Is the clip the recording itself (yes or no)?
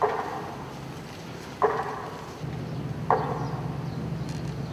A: yes